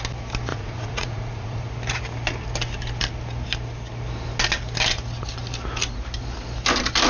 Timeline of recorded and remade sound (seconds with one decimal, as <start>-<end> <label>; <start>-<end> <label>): 0.0-0.5 recorded; 0.5-1.7 remade; 1.7-7.1 recorded